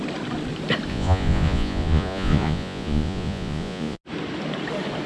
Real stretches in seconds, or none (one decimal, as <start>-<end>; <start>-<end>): 0.0-0.9; 4.0-5.1